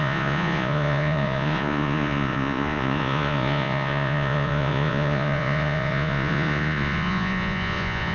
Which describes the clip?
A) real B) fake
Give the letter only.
B